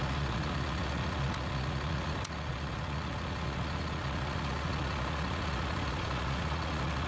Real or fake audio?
fake